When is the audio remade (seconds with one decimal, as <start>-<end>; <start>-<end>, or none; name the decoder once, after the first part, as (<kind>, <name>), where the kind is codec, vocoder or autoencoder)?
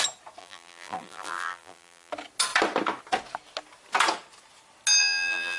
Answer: 0.4-2.1 (vocoder, BigVGAN v2); 5.0-5.6